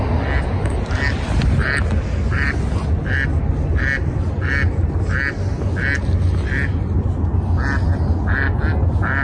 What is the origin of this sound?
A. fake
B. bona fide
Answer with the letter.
B